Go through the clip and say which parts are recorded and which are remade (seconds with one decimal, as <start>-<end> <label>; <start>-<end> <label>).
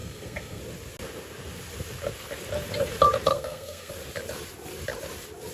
0.0-0.6 remade; 0.6-3.3 recorded; 3.3-3.9 remade; 3.9-5.5 recorded